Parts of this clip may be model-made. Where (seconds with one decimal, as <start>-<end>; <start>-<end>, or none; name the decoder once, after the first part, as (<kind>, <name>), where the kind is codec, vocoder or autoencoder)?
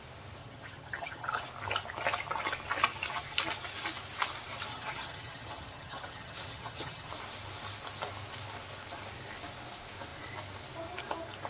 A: 0.4-1.4 (vocoder, HiFi-GAN); 4.7-7.1